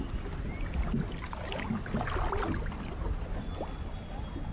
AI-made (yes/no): no